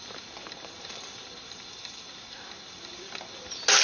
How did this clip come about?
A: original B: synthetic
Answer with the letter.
A